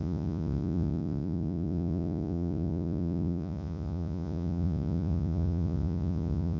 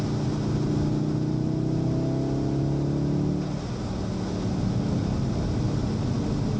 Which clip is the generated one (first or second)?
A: first